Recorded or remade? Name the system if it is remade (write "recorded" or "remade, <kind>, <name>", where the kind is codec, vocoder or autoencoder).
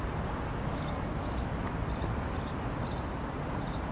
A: recorded